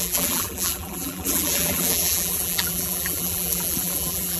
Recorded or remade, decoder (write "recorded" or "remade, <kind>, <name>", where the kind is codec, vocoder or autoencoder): remade, vocoder, BigVGAN v2